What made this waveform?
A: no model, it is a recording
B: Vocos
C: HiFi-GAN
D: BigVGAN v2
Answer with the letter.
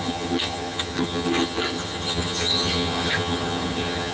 C